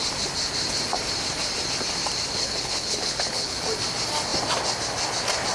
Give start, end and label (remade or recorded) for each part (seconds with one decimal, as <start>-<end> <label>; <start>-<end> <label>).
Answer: 0.0-2.4 recorded; 2.4-3.6 remade; 3.6-5.5 recorded